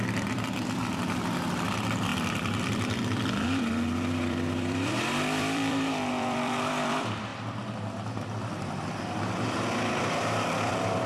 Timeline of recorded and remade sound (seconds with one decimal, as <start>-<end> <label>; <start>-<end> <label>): 0.0-0.8 remade; 0.8-1.5 recorded; 1.5-7.3 remade; 7.3-10.0 recorded; 10.0-11.1 remade